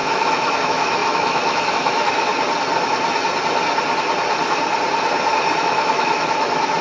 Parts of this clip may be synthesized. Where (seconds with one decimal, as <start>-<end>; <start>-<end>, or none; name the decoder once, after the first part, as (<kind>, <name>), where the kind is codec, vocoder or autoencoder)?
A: 0.0-2.3 (autoencoder, DAC-VAE); 5.6-6.8